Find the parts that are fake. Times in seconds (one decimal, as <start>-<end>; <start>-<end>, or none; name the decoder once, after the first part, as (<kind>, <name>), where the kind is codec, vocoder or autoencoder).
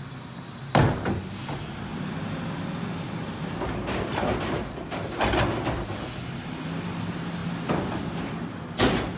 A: none